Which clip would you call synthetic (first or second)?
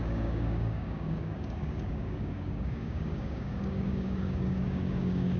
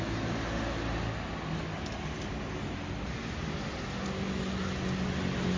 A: first